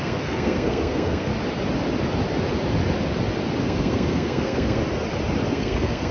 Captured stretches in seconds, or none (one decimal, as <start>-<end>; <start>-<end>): 1.3-3.6; 4.8-5.5